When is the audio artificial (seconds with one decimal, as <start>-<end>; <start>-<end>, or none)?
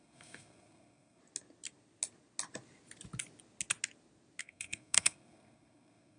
0.0-1.2; 4.4-6.2